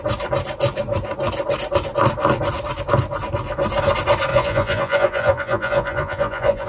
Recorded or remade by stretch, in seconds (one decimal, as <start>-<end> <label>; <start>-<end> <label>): 0.0-4.3 recorded; 4.3-6.7 remade